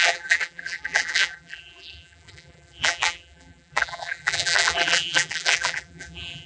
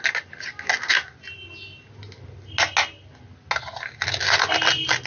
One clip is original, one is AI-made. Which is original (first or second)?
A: second